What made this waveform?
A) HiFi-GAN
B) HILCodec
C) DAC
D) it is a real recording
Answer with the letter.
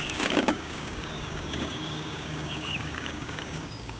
C